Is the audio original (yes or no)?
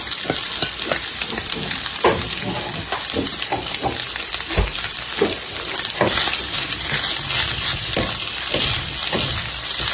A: yes